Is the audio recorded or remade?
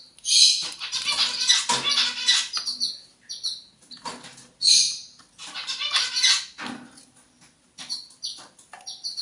recorded